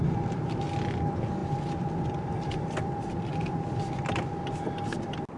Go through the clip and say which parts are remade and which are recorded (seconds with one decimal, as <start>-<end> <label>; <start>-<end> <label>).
0.0-1.4 recorded; 1.4-4.6 remade; 4.6-5.4 recorded